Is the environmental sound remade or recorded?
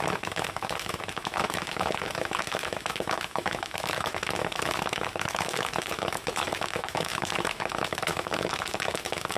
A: remade